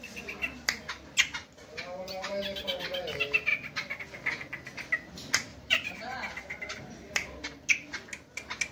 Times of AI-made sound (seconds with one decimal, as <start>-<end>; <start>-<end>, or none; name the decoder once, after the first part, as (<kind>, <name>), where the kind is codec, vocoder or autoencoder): 1.4-2.4 (vocoder, BigVGAN v2); 5.5-6.6

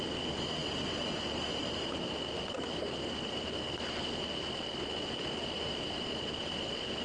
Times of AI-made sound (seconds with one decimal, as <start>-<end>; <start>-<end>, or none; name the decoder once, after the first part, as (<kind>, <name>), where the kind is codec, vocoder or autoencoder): none

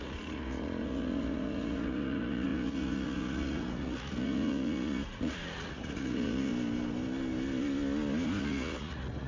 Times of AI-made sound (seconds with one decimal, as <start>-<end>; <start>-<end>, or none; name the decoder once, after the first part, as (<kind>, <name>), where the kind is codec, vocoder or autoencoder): 0.0-6.5 (vocoder, Vocos); 8.4-9.3

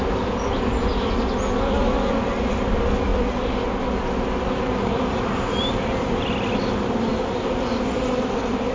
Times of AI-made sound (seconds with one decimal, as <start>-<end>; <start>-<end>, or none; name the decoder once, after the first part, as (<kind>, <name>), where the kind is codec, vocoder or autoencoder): none

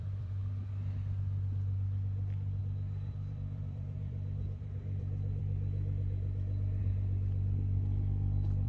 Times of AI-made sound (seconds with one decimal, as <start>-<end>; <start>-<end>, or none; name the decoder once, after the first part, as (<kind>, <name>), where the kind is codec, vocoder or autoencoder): 0.0-0.4 (vocoder, BigVGAN v2); 2.6-8.7

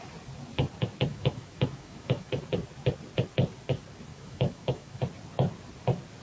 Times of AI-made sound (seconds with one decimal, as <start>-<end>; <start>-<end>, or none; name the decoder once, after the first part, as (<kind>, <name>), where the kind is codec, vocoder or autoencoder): 1.1-2.3 (autoencoder, DAC-VAE); 4.1-5.0

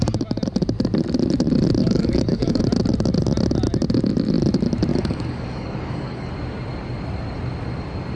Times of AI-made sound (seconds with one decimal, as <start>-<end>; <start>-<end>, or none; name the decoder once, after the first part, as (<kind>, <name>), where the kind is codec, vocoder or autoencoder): 1.8-2.6 (codec, DAC); 4.9-6.3

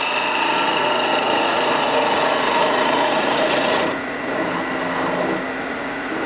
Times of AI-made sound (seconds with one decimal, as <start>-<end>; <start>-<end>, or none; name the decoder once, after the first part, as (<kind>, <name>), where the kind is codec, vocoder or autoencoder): 0.0-4.4 (vocoder, Vocos); 5.6-6.3